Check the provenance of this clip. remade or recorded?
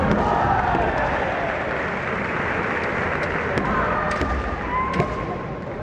recorded